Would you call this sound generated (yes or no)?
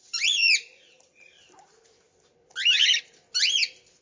no